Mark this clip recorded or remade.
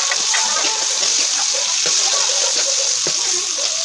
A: recorded